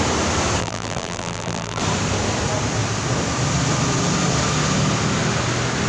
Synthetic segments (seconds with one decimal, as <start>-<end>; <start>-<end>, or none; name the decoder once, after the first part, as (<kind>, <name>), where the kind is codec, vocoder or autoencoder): 0.6-1.8 (vocoder, BigVGAN v2)